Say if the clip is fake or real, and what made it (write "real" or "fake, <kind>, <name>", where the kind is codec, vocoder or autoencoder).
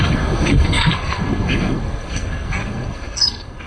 fake, codec, SNAC